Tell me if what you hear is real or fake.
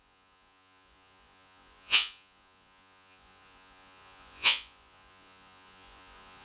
fake